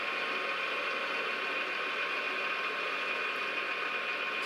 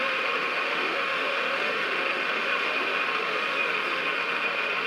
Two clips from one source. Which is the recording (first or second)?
first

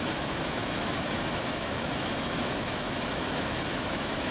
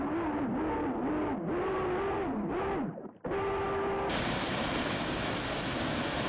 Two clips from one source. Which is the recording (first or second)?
second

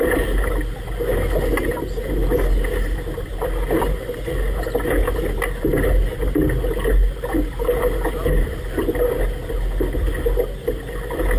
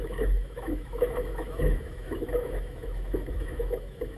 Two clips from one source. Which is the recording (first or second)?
first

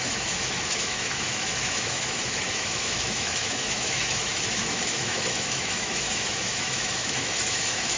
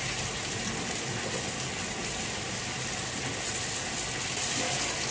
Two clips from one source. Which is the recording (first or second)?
second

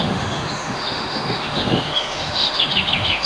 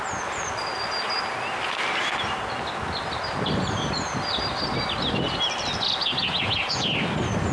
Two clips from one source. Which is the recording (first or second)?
second